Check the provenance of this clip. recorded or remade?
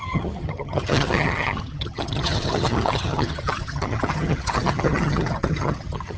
remade